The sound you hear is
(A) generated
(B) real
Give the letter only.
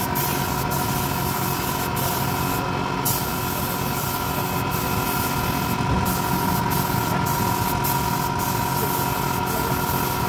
B